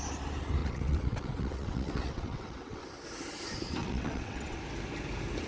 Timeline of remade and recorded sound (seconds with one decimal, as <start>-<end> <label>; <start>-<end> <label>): 0.0-0.6 recorded; 0.6-2.8 remade; 2.8-3.8 recorded; 3.8-4.6 remade; 4.6-5.5 recorded